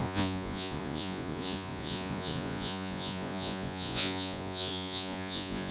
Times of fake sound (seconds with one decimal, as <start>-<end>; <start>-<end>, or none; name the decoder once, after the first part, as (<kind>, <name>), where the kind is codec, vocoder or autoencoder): 0.0-5.7 (vocoder, Vocos)